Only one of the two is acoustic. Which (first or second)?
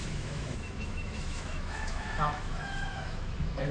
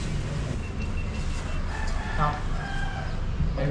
second